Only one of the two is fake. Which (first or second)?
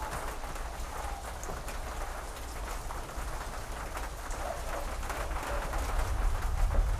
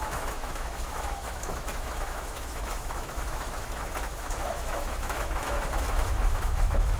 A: second